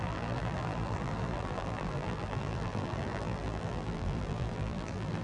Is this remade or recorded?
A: remade